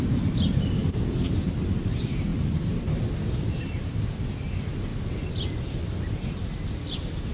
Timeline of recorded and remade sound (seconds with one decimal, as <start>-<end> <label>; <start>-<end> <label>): 0.0-0.8 remade; 0.8-1.3 recorded; 1.3-2.3 remade; 2.3-4.2 recorded; 4.2-4.9 remade; 4.9-6.1 recorded; 6.1-7.3 remade